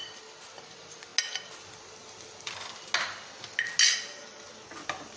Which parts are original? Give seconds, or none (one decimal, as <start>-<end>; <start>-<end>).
0.0-5.2